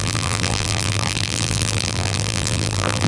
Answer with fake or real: fake